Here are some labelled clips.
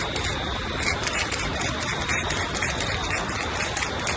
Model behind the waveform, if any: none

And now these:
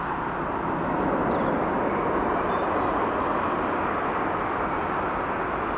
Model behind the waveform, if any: none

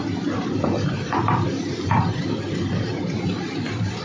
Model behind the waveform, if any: vocoder, BigVGAN v2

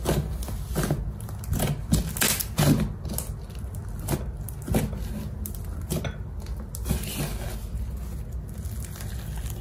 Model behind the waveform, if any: none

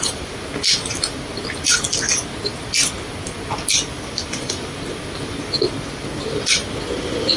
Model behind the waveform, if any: none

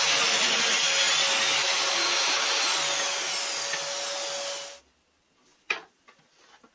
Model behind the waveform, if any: none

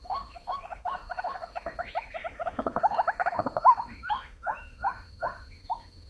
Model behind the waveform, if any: autoencoder, DAC-VAE